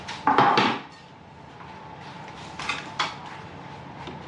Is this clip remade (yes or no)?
yes